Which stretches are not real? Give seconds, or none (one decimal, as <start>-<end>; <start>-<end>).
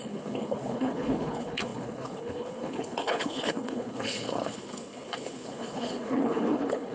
0.0-6.9